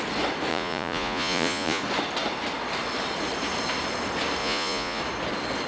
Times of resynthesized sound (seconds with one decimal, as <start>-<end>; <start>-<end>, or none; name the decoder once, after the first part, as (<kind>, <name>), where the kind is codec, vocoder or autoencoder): 0.5-1.8 (vocoder, Vocos); 4.4-5.0